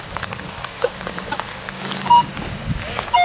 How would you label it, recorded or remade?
remade